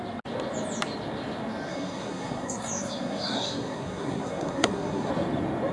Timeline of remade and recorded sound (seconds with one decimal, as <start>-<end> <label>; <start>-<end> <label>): 0.0-1.7 recorded; 1.7-5.1 remade; 5.1-5.7 recorded